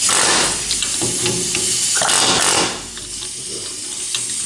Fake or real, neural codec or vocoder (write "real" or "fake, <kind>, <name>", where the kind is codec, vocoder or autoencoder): real